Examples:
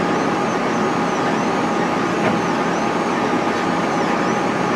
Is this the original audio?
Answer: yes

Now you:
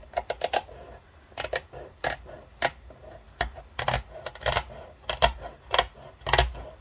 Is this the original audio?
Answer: yes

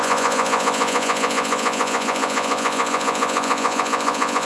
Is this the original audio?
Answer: no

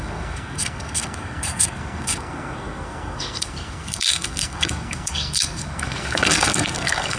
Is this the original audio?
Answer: no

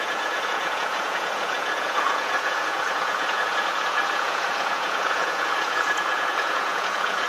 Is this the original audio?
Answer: no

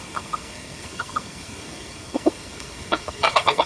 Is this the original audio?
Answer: no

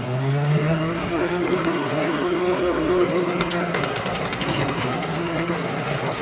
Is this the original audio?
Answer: no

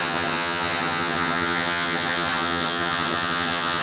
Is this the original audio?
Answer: no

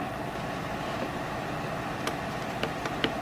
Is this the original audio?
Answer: yes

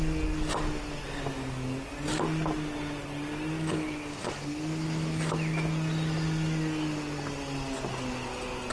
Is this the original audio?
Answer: yes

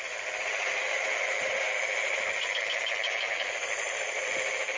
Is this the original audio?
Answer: yes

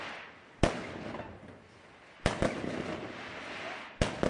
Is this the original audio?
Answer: yes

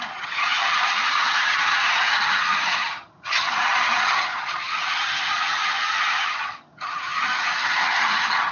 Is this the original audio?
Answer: no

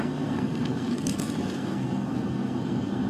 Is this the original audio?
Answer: no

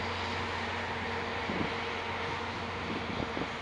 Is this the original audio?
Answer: yes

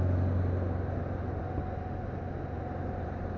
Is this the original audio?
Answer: yes